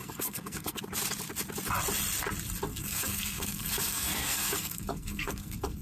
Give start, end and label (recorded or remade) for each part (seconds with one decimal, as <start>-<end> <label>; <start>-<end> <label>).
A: 0.0-0.8 remade; 0.8-2.7 recorded; 2.7-5.8 remade

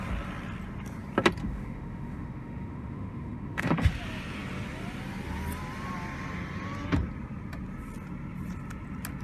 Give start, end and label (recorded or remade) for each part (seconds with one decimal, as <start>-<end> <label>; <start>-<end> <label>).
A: 0.0-1.4 recorded; 1.4-3.9 remade; 3.9-9.2 recorded

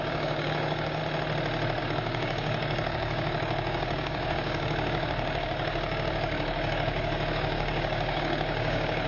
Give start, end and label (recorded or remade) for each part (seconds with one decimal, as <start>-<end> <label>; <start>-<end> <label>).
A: 0.0-1.0 remade; 1.0-1.8 recorded; 1.8-9.1 remade

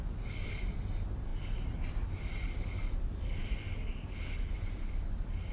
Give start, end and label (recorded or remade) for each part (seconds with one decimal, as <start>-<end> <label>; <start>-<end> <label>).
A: 0.0-5.5 recorded

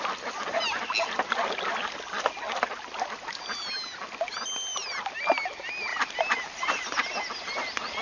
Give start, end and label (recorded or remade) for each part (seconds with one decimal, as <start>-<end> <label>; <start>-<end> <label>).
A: 0.0-5.9 recorded; 5.9-6.8 remade; 6.8-8.0 recorded

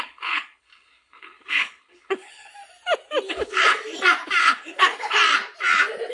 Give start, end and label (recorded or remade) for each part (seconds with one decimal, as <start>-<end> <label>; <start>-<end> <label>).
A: 0.0-2.5 remade; 2.5-3.3 recorded; 3.3-3.8 remade; 3.8-4.4 recorded; 4.4-5.2 remade; 5.2-6.1 recorded

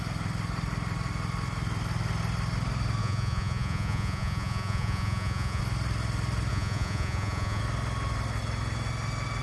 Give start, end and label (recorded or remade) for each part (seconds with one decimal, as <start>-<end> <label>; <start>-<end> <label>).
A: 0.0-3.0 recorded; 3.0-5.6 remade; 5.6-6.5 recorded; 6.5-7.6 remade; 7.6-9.4 recorded

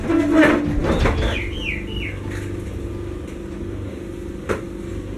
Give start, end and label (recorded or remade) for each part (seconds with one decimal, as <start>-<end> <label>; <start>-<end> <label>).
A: 0.0-5.2 recorded